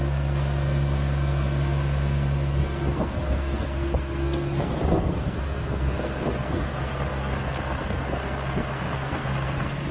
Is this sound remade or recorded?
remade